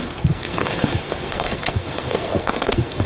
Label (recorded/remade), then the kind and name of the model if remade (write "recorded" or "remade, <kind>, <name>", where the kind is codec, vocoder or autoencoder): remade, codec, SNAC